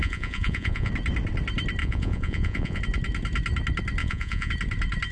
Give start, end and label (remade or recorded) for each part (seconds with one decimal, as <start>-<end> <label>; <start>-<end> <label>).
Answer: 0.0-0.9 remade; 0.9-1.8 recorded; 1.8-2.8 remade; 2.8-4.0 recorded; 4.0-4.5 remade; 4.5-5.1 recorded